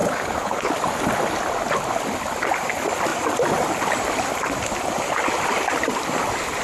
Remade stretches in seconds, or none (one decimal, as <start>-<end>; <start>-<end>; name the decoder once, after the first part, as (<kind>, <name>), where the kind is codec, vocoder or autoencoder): 0.0-0.7 (codec, HILCodec)

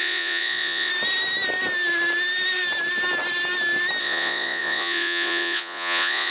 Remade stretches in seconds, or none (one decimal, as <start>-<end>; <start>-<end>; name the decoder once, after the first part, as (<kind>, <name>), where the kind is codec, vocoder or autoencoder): 0.0-0.9 (vocoder, Vocos); 4.0-6.3

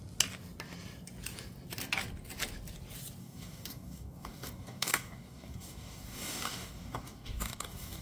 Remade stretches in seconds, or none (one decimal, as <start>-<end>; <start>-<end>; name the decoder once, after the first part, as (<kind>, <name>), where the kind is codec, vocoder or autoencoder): 3.2-8.0 (codec, DAC)

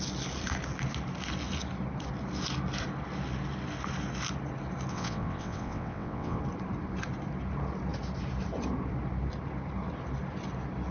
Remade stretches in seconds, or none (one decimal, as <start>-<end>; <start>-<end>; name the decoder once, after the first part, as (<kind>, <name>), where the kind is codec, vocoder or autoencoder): 4.9-6.4 (vocoder, WaveNeXt)

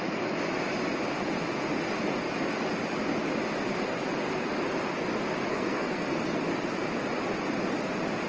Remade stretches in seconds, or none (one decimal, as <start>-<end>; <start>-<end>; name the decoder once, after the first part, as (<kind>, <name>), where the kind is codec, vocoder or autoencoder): 5.5-6.4 (codec, SNAC)

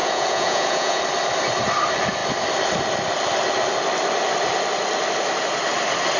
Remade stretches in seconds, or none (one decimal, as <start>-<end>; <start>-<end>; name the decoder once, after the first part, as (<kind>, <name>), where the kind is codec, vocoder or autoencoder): 0.0-1.0 (vocoder, Vocos)